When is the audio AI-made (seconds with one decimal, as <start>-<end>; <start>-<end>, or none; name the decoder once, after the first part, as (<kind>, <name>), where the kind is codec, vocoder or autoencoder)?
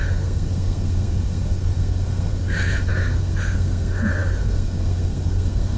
0.0-5.8 (codec, SNAC)